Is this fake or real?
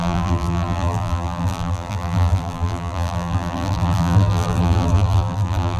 fake